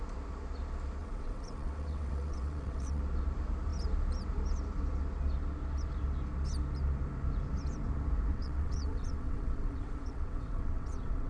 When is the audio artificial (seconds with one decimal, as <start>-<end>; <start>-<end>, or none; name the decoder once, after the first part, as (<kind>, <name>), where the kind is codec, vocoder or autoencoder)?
1.0-3.0 (vocoder, WaveNeXt); 8.3-11.3